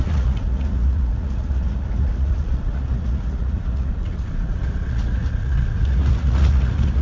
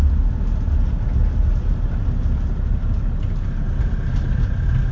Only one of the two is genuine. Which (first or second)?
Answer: second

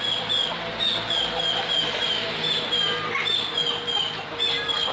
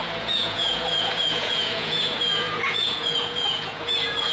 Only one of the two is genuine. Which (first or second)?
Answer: first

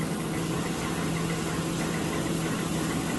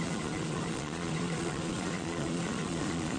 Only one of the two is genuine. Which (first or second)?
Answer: first